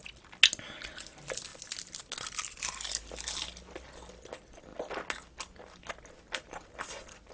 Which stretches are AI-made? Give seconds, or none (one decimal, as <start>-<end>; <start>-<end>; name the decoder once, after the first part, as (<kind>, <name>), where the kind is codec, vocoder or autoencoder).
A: none